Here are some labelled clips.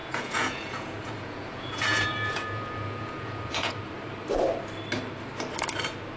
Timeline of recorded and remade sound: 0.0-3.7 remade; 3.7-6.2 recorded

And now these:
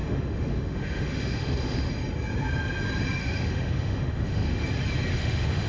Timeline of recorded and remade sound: 0.0-1.9 remade; 1.9-3.2 recorded; 3.2-4.6 remade; 4.6-5.1 recorded; 5.1-5.7 remade

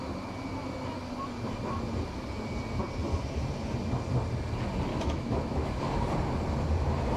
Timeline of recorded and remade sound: 0.0-4.9 recorded; 4.9-5.8 remade; 5.8-7.2 recorded

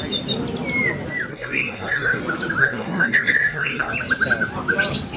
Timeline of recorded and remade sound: 0.0-1.3 recorded; 1.3-2.2 remade; 2.2-2.6 recorded; 2.6-3.9 remade; 3.9-5.2 recorded